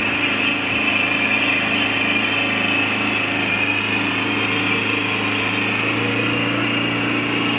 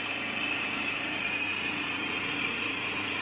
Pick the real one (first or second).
first